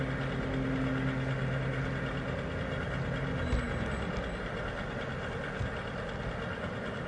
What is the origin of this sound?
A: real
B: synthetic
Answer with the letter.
A